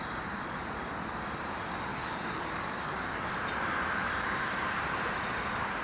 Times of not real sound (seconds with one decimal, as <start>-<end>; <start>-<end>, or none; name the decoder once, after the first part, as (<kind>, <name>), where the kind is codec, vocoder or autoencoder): 1.9-3.2 (codec, DAC)